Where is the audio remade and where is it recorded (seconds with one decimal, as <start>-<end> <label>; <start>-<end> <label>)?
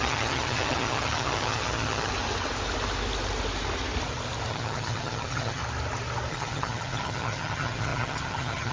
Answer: 0.0-2.1 remade; 2.1-4.5 recorded; 4.5-5.6 remade; 5.6-6.3 recorded; 6.3-8.7 remade